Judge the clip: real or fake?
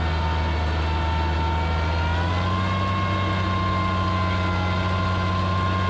real